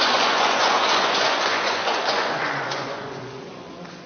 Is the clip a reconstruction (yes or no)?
yes